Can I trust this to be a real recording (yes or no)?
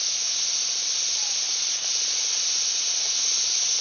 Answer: yes